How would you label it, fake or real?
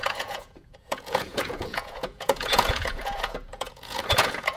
fake